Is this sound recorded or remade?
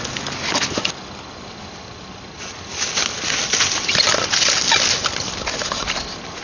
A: recorded